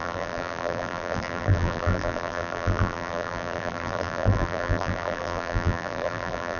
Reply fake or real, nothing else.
fake